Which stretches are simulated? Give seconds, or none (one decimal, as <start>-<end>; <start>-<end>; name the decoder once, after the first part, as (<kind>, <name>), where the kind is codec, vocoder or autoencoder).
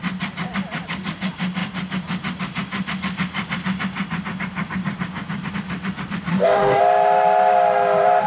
6.3-6.8 (codec, DAC)